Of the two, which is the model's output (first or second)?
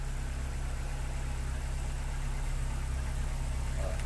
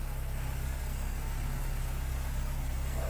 second